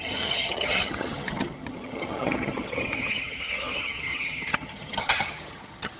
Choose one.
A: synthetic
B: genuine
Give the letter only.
A